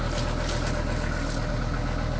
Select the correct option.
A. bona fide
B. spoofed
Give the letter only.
A